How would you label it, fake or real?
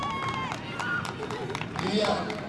real